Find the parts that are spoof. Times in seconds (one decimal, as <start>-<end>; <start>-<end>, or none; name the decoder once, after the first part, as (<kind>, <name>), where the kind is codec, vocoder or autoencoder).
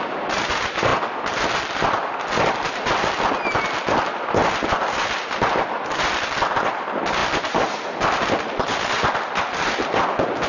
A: none